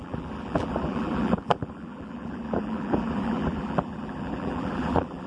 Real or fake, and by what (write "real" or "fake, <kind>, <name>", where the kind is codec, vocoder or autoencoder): fake, vocoder, BigVGAN v2